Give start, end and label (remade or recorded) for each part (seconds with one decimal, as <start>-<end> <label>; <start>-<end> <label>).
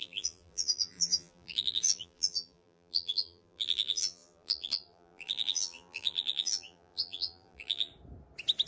0.0-7.9 remade; 7.9-8.7 recorded